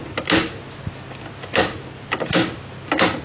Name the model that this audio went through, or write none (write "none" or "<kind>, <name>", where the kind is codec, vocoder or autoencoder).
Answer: none